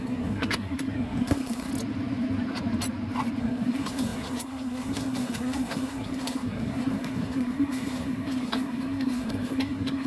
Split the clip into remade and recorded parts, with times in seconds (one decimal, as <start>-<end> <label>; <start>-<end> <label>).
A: 0.0-1.7 remade; 1.7-3.4 recorded; 3.4-10.1 remade